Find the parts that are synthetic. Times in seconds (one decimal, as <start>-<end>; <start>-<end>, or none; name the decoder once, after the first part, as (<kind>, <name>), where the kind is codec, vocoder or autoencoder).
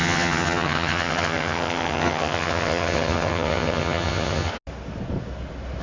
0.0-4.5 (vocoder, HiFi-GAN)